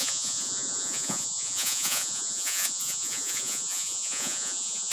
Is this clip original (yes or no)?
no